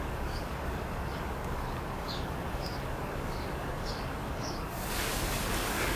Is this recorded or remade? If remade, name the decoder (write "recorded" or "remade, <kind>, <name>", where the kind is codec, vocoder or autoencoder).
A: remade, codec, DAC